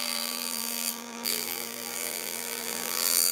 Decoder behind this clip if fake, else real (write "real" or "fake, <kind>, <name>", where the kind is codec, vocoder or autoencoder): fake, vocoder, BigVGAN v2